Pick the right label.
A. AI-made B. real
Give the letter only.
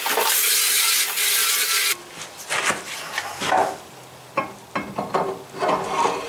B